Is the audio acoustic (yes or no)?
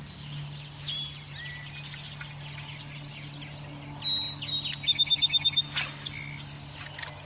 yes